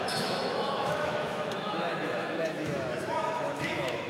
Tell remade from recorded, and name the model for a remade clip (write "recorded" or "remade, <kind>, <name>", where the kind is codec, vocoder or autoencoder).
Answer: remade, autoencoder, DAC-VAE